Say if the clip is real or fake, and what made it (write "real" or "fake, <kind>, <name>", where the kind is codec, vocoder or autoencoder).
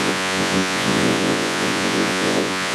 fake, vocoder, Vocos